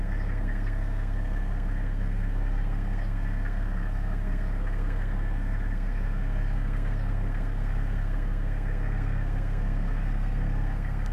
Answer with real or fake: fake